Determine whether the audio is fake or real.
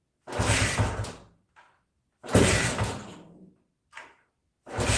real